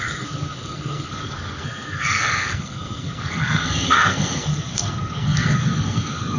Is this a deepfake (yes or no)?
yes